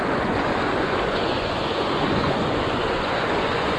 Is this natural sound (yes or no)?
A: no